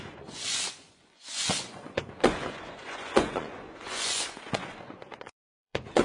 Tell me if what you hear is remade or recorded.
remade